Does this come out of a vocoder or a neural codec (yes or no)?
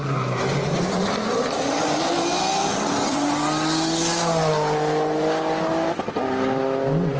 no